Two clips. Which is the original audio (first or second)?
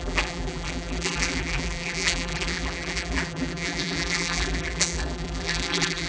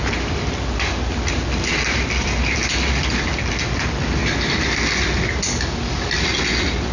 second